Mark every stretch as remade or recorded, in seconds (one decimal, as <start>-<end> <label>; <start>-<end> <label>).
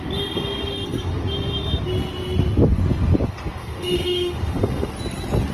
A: 0.0-3.6 recorded; 3.6-4.9 remade; 4.9-5.5 recorded